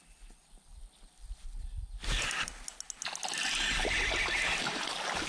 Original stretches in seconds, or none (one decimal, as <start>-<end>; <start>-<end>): 0.0-0.7; 2.2-5.3